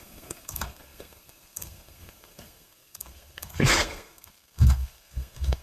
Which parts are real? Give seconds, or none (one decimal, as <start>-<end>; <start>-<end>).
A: none